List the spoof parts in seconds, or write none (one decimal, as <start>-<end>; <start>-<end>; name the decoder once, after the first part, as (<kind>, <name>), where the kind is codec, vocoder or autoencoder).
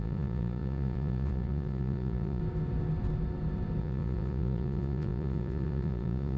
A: 0.0-2.4 (vocoder, Vocos); 3.8-6.4